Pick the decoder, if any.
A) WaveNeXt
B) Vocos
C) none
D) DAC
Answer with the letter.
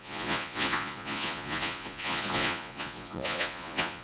B